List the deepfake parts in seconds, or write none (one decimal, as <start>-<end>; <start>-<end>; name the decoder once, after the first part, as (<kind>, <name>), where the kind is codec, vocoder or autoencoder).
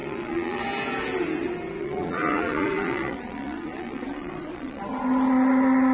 0.0-0.6 (vocoder, Vocos); 1.8-4.8